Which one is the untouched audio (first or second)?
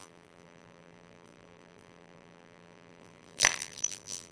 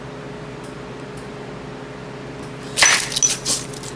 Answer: second